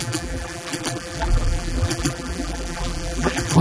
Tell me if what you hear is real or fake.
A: fake